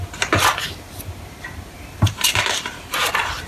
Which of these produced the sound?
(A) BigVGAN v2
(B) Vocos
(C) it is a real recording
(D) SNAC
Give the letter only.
A